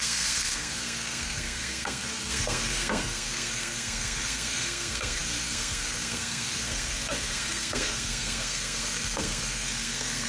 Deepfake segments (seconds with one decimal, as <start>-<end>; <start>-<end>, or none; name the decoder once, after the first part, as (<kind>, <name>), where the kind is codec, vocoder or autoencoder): 0.0-10.3 (codec, SNAC)